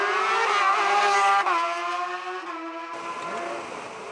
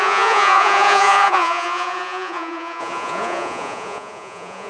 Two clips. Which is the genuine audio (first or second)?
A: first